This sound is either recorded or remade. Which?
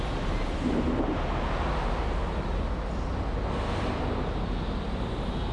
recorded